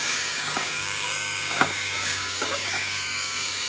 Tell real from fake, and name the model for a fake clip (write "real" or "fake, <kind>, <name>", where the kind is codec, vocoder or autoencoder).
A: fake, codec, DAC